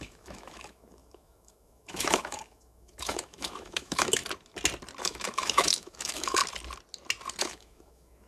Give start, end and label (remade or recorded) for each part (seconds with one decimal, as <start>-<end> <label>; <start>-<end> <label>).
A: 0.0-4.2 remade; 4.2-5.0 recorded; 5.0-6.4 remade; 6.4-7.4 recorded; 7.4-8.3 remade